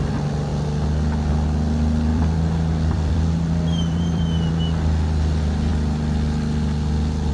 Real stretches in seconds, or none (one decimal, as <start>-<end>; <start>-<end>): 0.0-0.5; 1.3-2.1; 4.5-7.3